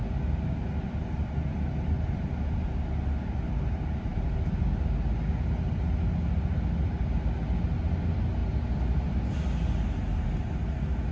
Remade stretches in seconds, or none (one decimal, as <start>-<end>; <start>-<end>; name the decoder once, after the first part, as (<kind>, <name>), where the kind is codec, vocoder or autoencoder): none